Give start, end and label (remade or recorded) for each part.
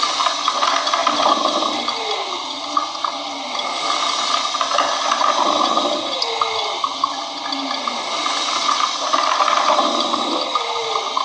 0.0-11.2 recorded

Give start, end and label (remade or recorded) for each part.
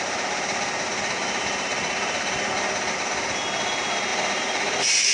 0.0-5.1 recorded